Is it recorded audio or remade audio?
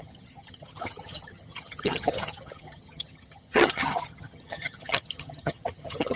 remade